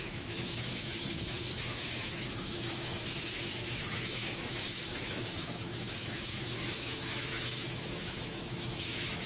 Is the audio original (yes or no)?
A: no